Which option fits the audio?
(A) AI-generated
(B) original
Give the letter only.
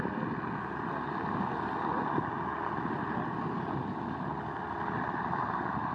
B